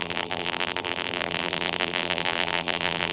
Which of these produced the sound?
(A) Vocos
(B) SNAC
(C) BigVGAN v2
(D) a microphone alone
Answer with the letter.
C